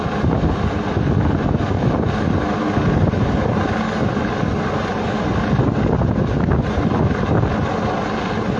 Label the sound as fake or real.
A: real